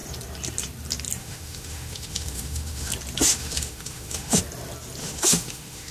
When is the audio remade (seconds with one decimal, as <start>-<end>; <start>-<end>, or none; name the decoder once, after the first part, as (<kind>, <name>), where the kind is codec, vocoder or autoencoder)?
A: 1.2-2.9 (autoencoder, DAC-VAE); 3.3-4.4; 5.0-5.9